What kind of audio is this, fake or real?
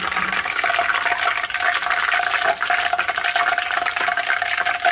real